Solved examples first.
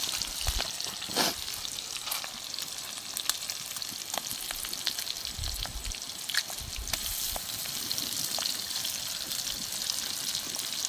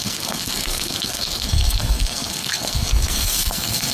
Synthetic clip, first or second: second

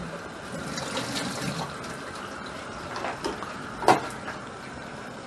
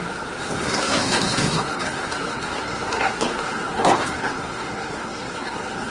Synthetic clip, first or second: second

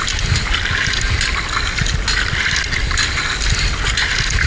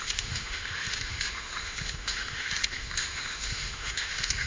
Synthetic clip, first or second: second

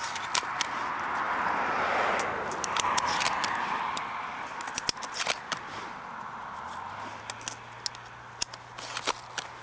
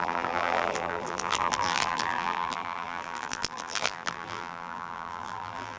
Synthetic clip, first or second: second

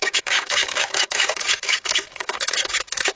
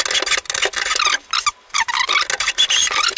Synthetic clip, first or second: first